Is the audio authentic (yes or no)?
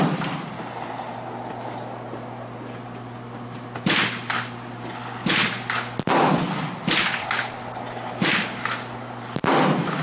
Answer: yes